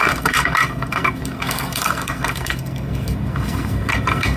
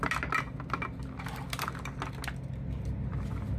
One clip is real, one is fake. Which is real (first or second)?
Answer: second